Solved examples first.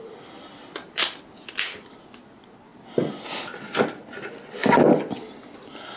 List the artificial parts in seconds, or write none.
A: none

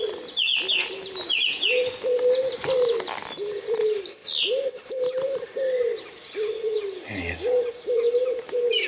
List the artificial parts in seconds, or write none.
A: none

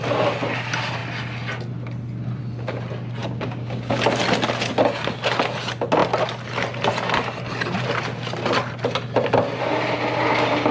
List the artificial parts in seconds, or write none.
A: 3.2-4.0 (codec, DAC)